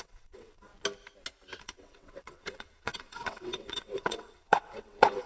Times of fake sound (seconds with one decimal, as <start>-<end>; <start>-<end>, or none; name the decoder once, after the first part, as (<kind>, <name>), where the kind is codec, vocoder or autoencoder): 0.0-0.7 (vocoder, WaveNeXt); 1.6-5.3